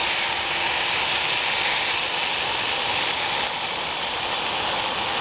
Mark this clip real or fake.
real